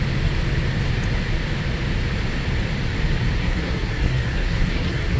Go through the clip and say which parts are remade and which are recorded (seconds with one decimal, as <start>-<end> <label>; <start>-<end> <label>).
0.0-3.4 recorded; 3.4-5.2 remade